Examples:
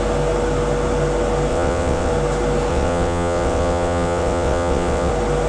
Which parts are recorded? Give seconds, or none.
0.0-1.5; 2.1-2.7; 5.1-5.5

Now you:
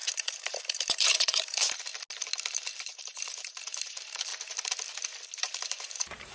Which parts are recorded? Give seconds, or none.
1.9-2.5; 4.3-5.4